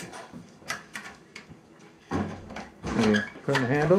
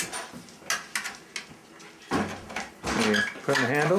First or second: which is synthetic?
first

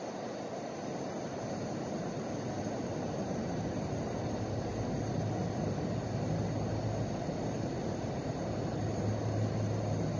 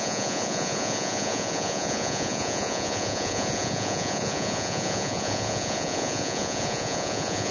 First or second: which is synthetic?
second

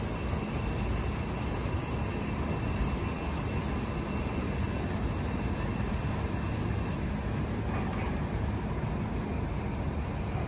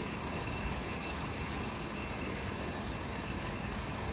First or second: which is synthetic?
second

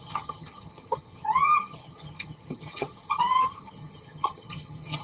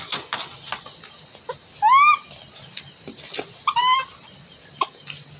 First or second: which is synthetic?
first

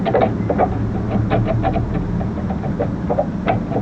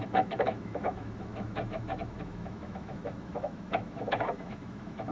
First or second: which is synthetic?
second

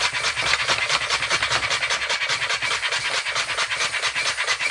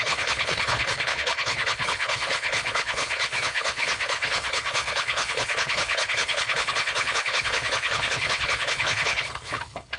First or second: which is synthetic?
second